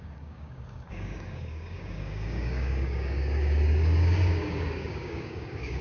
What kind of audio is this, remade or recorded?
remade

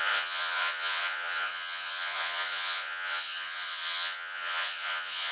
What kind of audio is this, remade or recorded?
remade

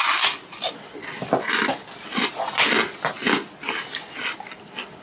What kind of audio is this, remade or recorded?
recorded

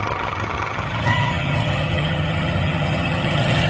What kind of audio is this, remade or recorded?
remade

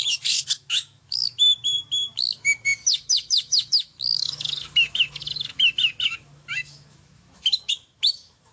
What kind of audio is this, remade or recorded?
remade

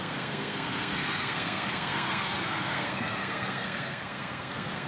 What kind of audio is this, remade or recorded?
remade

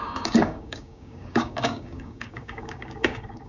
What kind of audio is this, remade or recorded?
remade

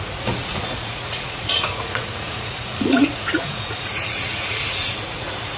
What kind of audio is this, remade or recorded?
remade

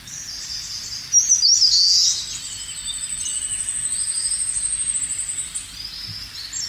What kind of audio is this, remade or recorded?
recorded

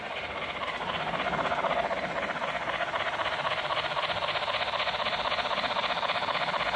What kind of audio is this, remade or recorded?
recorded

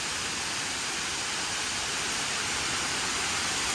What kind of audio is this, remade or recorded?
recorded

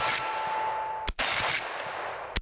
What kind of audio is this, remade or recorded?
recorded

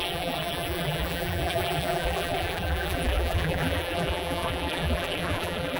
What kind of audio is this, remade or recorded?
remade